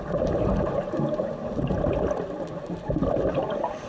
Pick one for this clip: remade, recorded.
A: remade